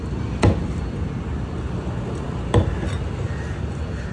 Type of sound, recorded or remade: recorded